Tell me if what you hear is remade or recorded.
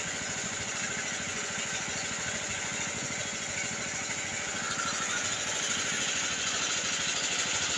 remade